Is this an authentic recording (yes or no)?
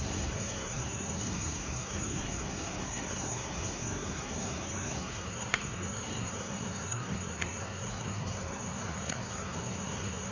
no